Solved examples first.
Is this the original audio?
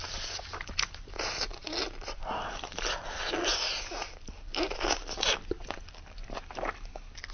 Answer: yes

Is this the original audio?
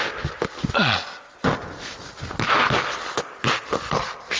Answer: yes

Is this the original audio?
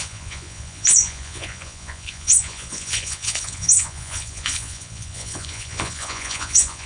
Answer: no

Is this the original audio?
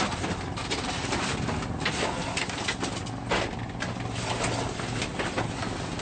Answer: yes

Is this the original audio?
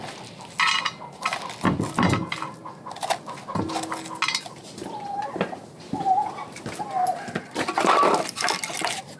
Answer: yes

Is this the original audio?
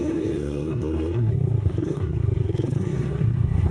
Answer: no